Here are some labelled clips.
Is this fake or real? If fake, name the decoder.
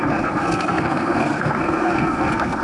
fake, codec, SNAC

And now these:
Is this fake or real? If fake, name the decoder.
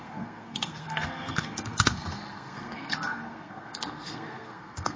fake, codec, SNAC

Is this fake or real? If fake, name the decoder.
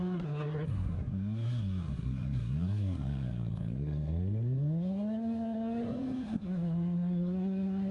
fake, codec, SNAC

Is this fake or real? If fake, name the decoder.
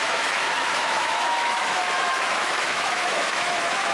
fake, autoencoder, DAC-VAE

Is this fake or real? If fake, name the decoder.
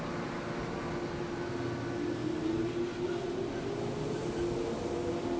real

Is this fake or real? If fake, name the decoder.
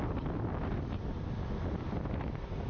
real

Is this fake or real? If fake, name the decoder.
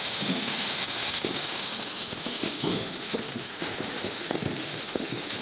fake, autoencoder, DAC-VAE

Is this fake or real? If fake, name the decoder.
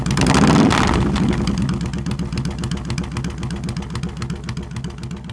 real